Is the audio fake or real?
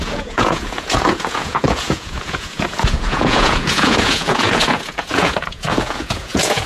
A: fake